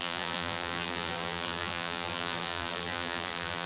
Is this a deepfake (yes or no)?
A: yes